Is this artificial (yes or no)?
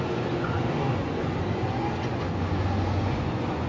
yes